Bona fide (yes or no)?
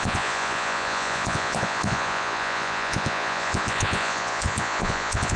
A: no